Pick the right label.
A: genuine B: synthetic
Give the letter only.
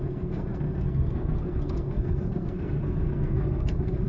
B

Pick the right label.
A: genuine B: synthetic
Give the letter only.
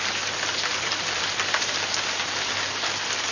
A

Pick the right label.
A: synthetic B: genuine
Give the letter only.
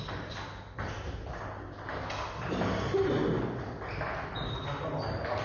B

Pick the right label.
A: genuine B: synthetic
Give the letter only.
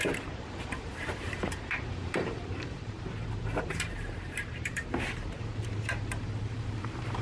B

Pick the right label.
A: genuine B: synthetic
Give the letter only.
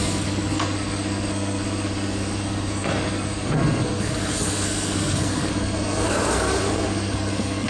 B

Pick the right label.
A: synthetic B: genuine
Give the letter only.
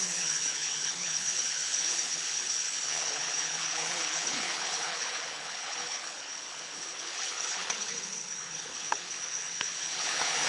A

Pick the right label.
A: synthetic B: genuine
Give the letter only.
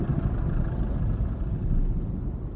B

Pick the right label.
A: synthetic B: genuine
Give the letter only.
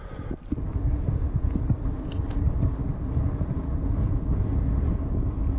B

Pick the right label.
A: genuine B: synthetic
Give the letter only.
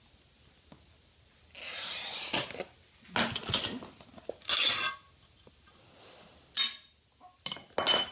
A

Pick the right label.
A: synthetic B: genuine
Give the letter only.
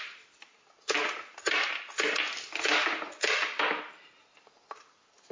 B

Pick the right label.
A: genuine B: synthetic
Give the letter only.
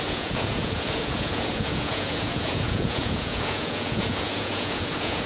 B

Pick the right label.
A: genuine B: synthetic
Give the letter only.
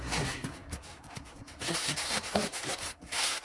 B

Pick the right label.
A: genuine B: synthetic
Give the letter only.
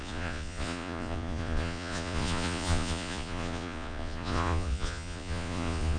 B